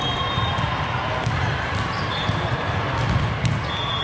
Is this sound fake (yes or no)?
no